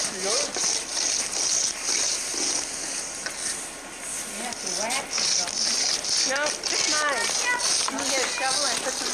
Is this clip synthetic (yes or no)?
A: no